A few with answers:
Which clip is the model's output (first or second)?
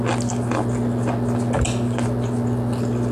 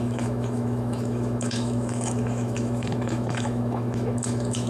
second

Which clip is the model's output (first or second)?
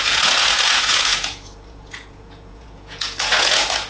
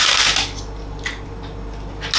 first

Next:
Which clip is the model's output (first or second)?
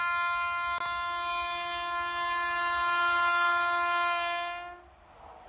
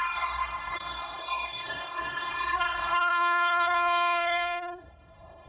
second